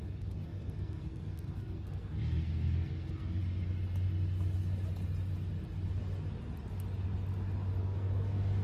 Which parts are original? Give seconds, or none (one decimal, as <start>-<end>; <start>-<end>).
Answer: 3.4-7.8